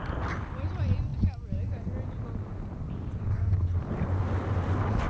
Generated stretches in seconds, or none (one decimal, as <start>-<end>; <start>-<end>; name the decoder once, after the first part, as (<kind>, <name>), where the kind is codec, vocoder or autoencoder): none